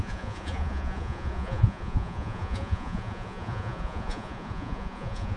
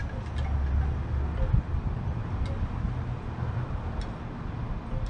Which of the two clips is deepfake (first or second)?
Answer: first